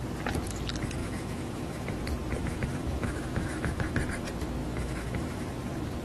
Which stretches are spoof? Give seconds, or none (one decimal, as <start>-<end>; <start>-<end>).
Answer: 1.0-1.9; 2.4-3.9; 4.6-5.5